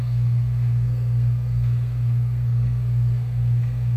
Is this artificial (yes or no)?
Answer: yes